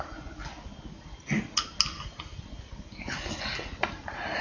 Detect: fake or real real